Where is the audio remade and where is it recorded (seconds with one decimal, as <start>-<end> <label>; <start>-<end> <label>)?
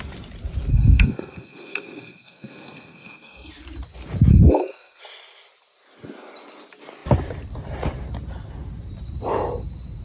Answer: 0.0-0.7 recorded; 0.7-3.5 remade; 3.5-4.3 recorded; 4.3-5.0 remade; 5.0-10.0 recorded